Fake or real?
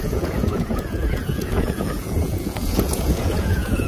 fake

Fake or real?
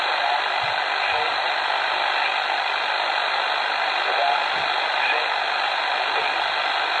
real